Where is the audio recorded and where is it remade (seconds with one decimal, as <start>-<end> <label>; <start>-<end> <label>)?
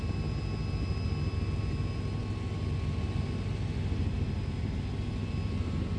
0.0-6.0 recorded